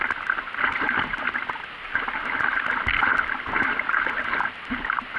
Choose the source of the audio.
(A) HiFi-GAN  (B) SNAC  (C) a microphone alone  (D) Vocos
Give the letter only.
C